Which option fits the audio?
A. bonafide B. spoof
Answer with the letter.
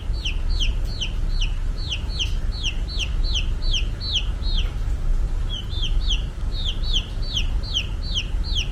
A